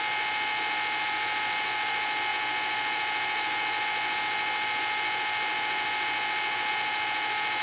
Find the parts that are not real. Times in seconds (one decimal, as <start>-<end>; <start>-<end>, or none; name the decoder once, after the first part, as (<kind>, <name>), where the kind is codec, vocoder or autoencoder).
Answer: none